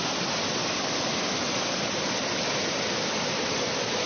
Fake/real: real